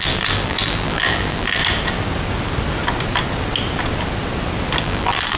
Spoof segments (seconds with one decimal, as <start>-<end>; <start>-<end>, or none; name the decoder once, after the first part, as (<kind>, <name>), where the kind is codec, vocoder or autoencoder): 0.0-1.6 (vocoder, BigVGAN v2); 4.8-5.4